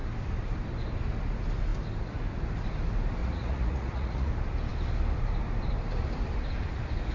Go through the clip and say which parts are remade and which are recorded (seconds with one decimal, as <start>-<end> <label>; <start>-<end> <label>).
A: 0.0-3.2 recorded; 3.2-4.3 remade; 4.3-7.1 recorded